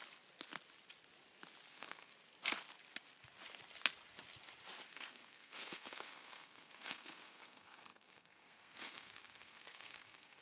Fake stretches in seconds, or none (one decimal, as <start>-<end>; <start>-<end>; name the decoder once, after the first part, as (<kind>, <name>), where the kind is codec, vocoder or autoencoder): 1.7-2.1 (codec, SNAC); 4.9-10.4